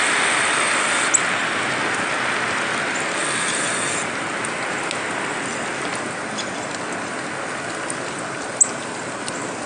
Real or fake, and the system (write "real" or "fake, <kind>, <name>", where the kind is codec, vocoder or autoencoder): real